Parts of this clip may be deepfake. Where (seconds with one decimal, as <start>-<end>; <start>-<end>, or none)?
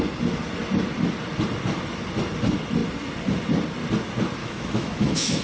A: 4.4-5.4